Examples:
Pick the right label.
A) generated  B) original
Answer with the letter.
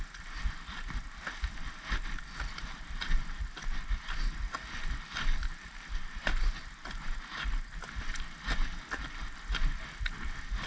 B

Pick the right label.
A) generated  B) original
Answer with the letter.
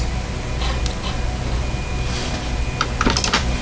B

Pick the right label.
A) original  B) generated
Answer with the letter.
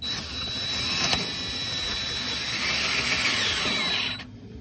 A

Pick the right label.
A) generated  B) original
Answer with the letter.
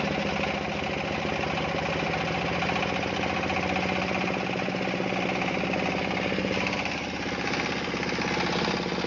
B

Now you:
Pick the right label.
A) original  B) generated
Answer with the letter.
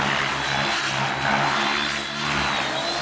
A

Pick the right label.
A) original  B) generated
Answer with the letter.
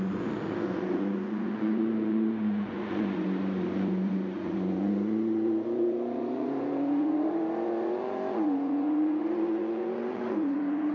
B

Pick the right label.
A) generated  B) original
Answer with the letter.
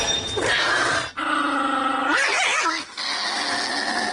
B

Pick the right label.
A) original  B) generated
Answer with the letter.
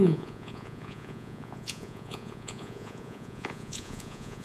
B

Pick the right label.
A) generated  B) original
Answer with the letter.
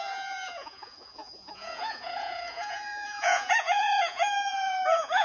A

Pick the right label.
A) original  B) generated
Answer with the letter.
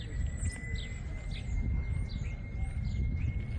A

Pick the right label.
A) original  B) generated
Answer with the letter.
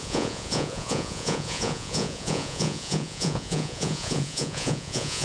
B